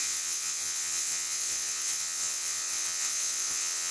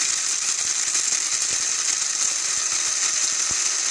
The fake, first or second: first